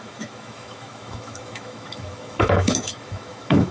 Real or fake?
fake